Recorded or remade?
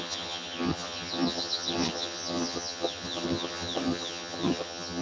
remade